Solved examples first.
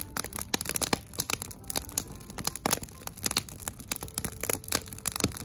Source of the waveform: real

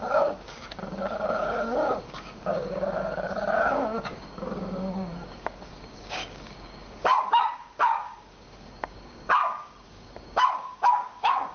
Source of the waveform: fake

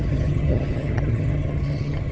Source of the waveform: fake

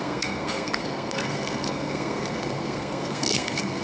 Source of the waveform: fake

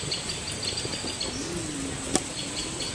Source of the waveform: real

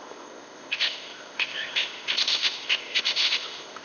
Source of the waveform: fake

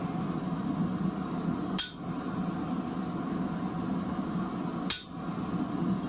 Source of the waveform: real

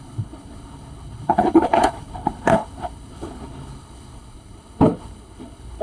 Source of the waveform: fake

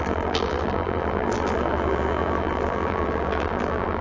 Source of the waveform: fake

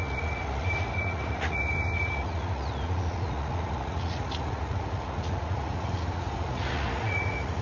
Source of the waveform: fake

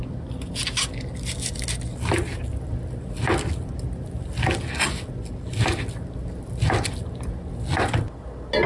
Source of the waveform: real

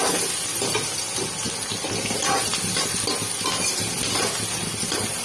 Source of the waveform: real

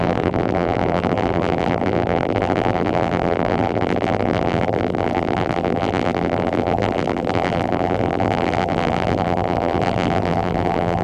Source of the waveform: fake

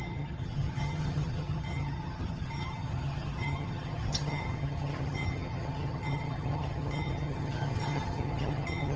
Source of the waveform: fake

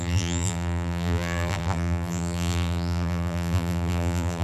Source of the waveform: fake